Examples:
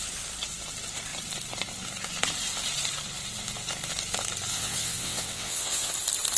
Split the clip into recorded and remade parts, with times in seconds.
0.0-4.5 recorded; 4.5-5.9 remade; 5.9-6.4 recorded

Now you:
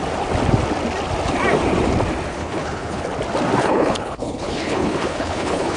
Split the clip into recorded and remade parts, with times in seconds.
0.0-2.3 recorded; 2.3-3.0 remade; 3.0-3.6 recorded; 3.6-5.8 remade

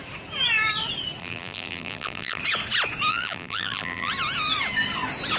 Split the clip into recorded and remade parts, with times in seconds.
0.0-1.2 recorded; 1.2-2.4 remade; 2.4-3.1 recorded; 3.1-4.1 remade; 4.1-5.4 recorded

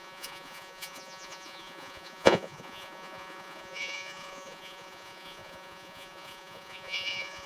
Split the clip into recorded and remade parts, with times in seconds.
0.0-7.5 remade